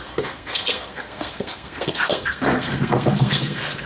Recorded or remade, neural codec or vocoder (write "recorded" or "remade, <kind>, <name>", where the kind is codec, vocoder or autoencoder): remade, codec, SNAC